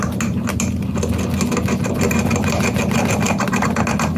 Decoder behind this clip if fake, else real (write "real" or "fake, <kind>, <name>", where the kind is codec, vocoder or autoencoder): real